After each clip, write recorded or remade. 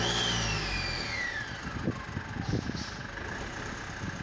recorded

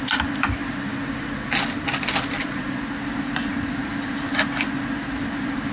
recorded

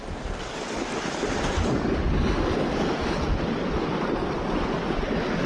recorded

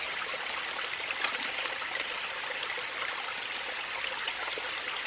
recorded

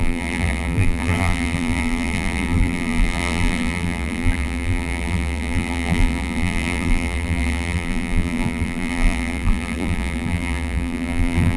remade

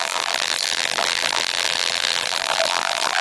remade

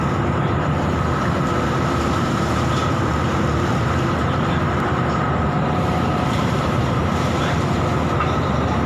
remade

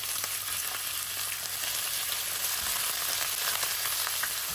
recorded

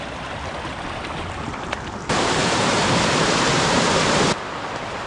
remade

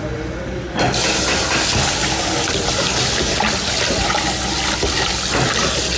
recorded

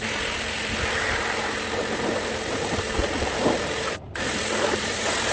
remade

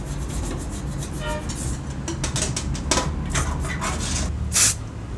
recorded